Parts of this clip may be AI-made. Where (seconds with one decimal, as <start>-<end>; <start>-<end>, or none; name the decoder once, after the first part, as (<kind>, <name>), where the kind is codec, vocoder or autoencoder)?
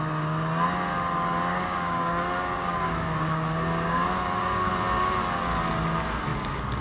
1.5-4.7 (codec, DAC)